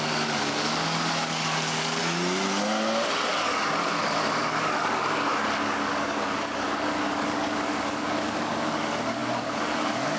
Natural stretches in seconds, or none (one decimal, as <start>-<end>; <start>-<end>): 2.0-3.3